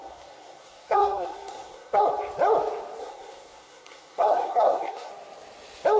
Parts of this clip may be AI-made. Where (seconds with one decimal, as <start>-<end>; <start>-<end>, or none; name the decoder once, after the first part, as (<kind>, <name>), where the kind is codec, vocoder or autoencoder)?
0.0-2.0 (codec, SNAC); 3.0-5.1